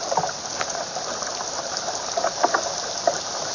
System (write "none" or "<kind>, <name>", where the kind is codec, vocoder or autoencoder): none